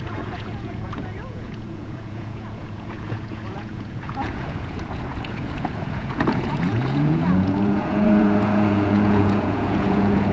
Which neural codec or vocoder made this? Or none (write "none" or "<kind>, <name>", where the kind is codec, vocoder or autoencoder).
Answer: vocoder, Vocos